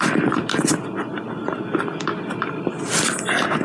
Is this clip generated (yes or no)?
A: no